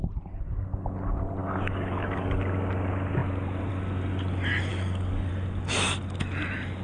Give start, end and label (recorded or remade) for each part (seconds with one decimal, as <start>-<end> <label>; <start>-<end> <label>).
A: 0.0-1.4 recorded; 1.4-2.4 remade; 2.4-4.7 recorded; 4.7-5.3 remade; 5.3-6.8 recorded